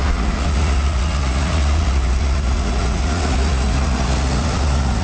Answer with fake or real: fake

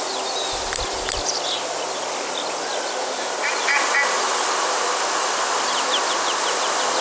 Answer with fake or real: real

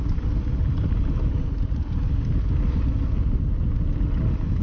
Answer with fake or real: real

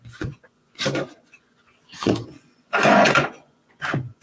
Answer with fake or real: fake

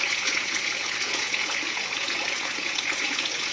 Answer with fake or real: fake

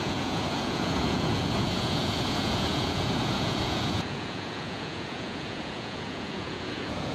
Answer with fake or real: fake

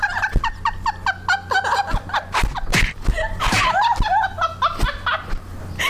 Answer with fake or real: real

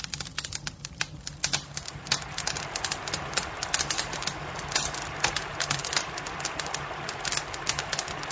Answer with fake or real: real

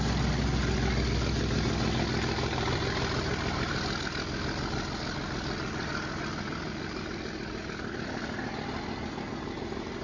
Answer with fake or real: real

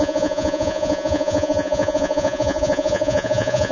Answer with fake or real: fake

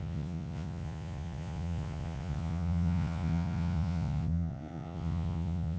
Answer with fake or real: fake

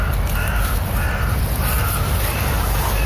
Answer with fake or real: real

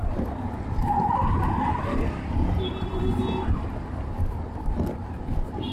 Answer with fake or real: real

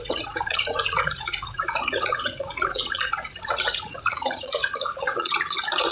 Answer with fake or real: fake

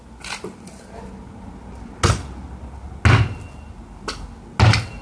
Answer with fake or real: real